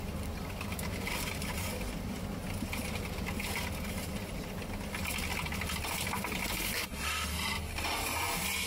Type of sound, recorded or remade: recorded